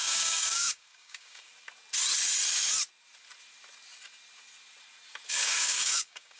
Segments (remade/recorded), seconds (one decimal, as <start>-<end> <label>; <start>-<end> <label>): 0.0-1.5 remade; 1.5-5.3 recorded; 5.3-6.4 remade